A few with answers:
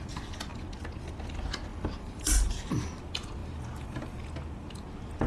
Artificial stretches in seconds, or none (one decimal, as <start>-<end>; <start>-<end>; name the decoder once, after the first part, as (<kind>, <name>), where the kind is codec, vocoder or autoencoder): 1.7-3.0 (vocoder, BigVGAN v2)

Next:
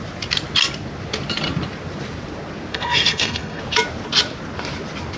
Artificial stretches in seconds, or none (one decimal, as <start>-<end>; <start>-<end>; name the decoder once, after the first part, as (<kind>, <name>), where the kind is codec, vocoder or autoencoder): 2.7-3.6 (codec, SNAC)

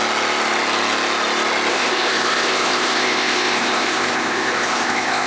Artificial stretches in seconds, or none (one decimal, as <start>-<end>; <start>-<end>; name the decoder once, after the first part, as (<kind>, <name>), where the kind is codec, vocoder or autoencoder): 1.7-5.3 (codec, ZipCodec)

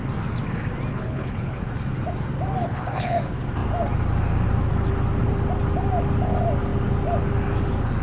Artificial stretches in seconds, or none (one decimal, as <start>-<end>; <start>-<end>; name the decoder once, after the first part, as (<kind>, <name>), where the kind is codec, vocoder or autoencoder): 0.9-1.6 (codec, HILCodec); 2.6-3.2

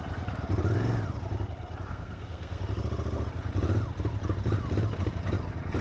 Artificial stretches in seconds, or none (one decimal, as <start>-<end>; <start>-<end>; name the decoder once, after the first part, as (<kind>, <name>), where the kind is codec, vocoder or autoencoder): 1.9-2.6 (codec, SNAC)

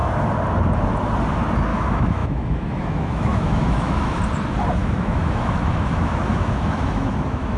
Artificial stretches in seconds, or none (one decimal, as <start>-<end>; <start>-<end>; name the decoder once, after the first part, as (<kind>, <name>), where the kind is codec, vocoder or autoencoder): 1.7-4.2 (autoencoder, DAC-VAE); 4.8-7.6